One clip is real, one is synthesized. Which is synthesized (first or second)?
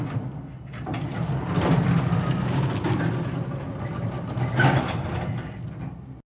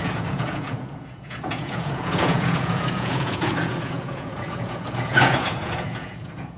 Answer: second